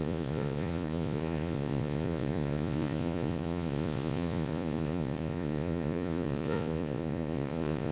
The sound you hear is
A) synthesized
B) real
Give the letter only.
A